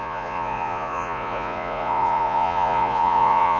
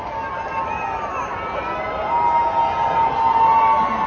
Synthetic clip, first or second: first